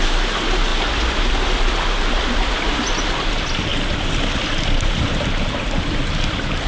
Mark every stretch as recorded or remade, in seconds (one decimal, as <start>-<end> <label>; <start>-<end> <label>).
0.0-6.7 recorded